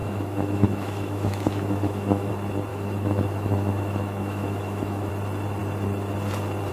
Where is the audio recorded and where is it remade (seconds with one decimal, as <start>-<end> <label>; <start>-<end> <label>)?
0.0-2.3 remade; 2.3-2.7 recorded; 2.7-5.1 remade; 5.1-6.7 recorded